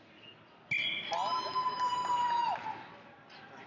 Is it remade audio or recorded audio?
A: recorded